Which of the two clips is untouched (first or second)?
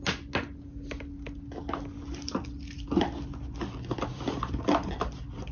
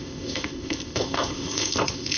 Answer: first